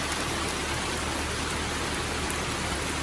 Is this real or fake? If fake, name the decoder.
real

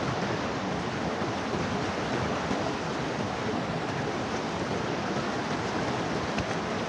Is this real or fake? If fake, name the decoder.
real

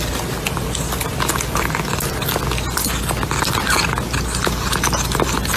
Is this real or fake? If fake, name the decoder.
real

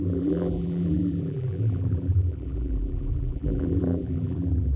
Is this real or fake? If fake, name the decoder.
fake, vocoder, BigVGAN v2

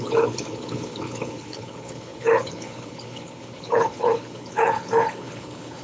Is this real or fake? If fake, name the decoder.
fake, codec, HILCodec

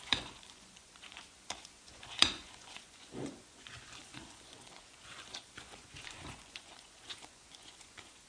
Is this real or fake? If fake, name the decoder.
fake, vocoder, Vocos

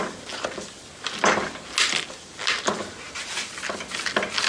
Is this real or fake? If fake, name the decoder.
real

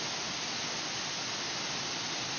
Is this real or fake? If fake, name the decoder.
real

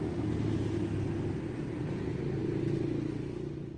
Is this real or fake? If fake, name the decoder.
real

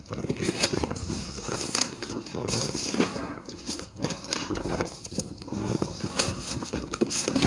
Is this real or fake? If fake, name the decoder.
fake, codec, SNAC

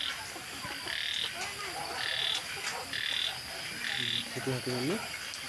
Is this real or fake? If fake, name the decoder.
real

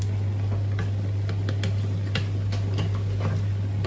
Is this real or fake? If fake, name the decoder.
real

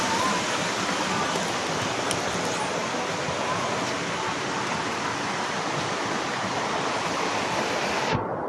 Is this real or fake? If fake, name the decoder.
real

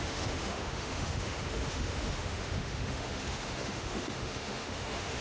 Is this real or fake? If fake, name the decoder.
fake, autoencoder, DAC-VAE